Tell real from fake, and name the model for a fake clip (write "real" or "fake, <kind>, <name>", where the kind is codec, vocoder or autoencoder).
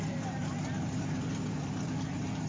fake, vocoder, BigVGAN v2